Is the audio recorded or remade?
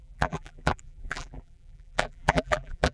remade